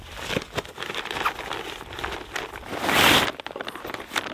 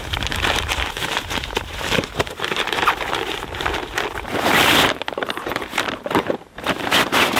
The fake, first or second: second